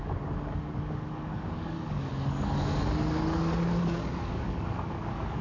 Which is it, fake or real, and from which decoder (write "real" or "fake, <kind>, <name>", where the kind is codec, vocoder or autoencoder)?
fake, codec, DAC